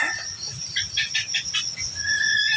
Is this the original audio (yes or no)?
yes